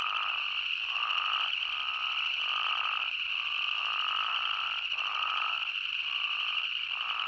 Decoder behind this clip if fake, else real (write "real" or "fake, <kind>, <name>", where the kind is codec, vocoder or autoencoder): real